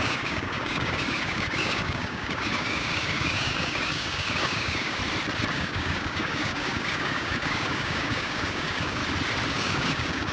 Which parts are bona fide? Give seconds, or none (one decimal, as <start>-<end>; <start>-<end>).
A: 5.0-5.5; 9.0-9.5